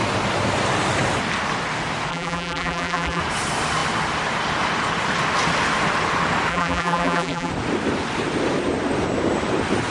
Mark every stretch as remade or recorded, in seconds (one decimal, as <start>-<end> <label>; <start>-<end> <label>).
0.0-2.1 recorded; 2.1-3.2 remade; 3.2-6.5 recorded; 6.5-7.5 remade; 7.5-9.9 recorded